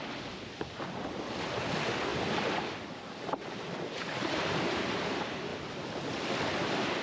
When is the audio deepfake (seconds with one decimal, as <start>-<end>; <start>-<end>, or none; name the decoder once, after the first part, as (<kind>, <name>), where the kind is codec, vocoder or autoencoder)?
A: none